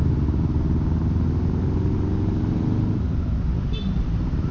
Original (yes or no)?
yes